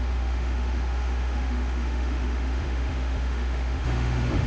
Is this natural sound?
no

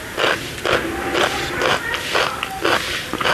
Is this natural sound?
yes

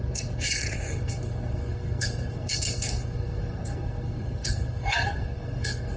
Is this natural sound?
no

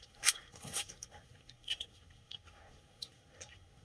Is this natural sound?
no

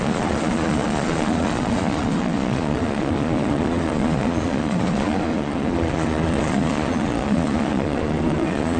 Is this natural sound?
no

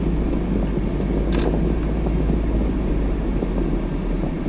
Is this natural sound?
yes